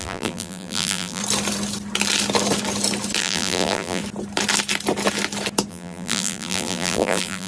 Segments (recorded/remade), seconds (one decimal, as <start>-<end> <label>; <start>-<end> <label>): 0.0-1.2 remade; 1.2-3.2 recorded; 3.2-4.0 remade; 4.0-5.7 recorded; 5.7-7.5 remade